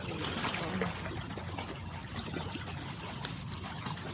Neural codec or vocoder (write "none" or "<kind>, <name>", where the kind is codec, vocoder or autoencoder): none